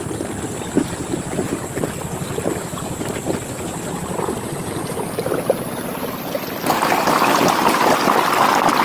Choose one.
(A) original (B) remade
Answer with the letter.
A